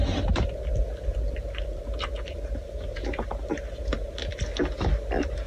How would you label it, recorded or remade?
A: recorded